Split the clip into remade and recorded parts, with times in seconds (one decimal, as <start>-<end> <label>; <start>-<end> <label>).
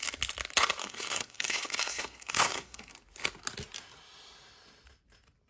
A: 0.0-0.8 recorded; 0.8-2.9 remade; 2.9-5.5 recorded